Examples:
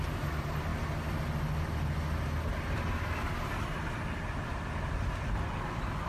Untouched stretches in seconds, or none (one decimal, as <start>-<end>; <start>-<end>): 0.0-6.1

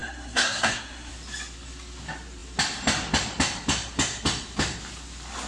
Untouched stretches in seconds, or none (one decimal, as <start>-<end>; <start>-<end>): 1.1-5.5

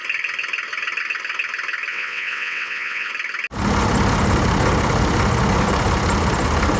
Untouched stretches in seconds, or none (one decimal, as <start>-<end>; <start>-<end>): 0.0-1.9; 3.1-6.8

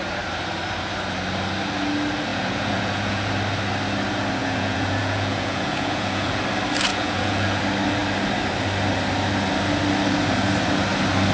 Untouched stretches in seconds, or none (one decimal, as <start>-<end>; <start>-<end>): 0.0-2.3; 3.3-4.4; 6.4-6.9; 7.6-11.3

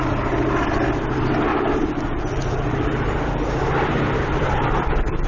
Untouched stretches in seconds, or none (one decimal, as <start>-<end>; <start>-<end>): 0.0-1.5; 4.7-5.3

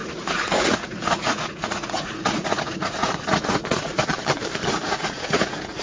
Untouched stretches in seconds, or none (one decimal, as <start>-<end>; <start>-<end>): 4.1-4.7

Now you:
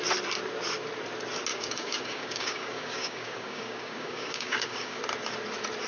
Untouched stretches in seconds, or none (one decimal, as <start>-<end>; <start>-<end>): 0.0-1.5; 5.0-5.9